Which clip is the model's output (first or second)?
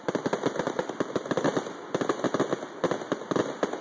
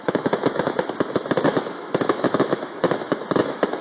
second